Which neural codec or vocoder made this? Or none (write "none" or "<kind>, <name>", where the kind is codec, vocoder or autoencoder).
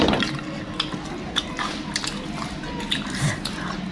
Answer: none